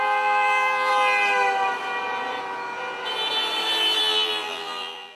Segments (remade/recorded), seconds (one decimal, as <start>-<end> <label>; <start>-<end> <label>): 0.0-0.9 remade; 0.9-4.0 recorded; 4.0-5.1 remade